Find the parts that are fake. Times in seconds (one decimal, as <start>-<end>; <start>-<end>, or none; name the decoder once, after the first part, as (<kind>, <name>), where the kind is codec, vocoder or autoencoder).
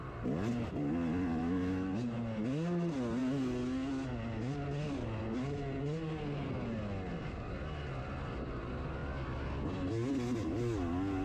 1.4-1.9 (autoencoder, DAC-VAE)